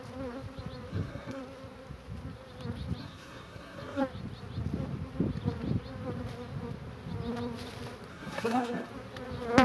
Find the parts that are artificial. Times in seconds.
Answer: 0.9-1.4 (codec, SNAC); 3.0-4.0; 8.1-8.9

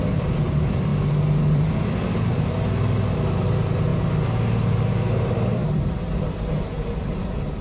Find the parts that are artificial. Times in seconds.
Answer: 0.0-3.9 (vocoder, BigVGAN v2); 5.1-7.6

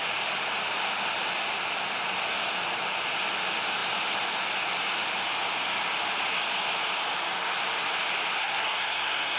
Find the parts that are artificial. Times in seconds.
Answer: 8.4-9.4 (codec, SNAC)

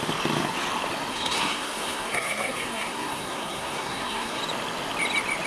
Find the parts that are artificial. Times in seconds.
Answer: 1.1-4.4 (codec, SNAC)

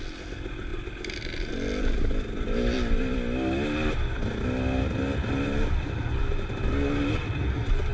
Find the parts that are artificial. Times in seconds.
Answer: none